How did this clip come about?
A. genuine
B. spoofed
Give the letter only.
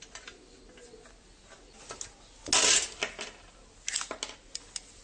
A